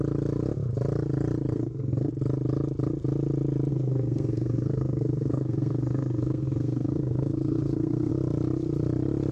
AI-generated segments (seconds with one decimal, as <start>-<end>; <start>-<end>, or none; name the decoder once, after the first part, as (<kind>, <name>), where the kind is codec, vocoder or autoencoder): 1.5-2.1 (codec, SNAC); 3.7-8.1